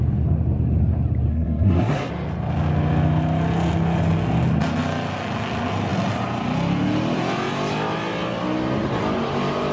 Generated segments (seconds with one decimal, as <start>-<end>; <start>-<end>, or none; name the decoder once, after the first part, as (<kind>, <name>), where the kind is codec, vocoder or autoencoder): 1.3-2.1 (codec, SNAC)